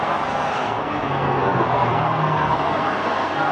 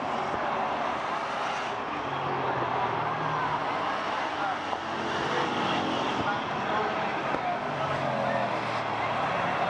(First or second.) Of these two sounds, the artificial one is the first